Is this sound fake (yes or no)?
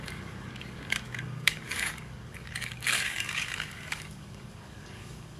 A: yes